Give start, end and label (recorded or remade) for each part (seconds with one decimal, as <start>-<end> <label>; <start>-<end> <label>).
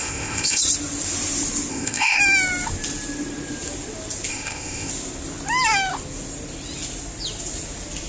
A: 0.0-0.6 remade; 0.6-1.7 recorded; 1.7-2.2 remade; 2.2-4.3 recorded; 4.3-4.9 remade; 4.9-8.1 recorded